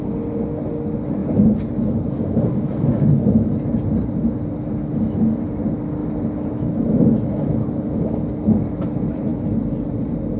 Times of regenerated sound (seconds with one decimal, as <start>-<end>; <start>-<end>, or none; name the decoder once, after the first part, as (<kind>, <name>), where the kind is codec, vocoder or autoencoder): none